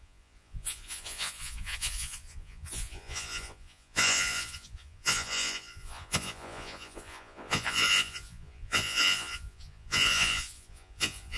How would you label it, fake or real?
fake